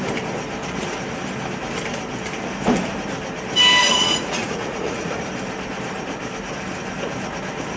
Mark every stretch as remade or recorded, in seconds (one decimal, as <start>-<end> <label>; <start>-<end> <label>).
0.0-3.8 recorded; 3.8-5.3 remade; 5.3-7.8 recorded